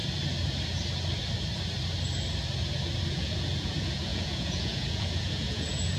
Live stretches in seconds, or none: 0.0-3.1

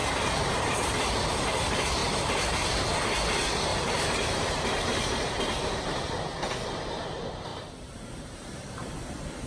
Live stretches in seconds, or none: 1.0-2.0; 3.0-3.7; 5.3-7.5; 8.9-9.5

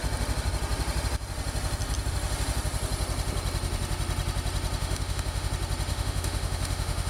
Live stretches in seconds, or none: 0.0-4.8; 5.5-5.9

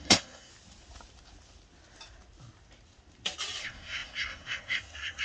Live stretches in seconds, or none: 0.5-3.6

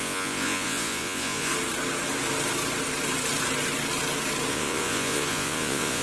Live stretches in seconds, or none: 1.5-4.5